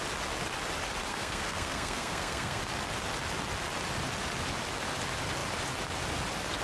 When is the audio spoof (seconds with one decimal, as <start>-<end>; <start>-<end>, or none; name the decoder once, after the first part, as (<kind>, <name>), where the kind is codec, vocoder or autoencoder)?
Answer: 1.1-2.6 (codec, SNAC)